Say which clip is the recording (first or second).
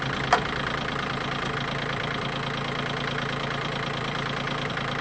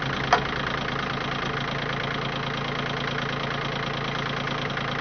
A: second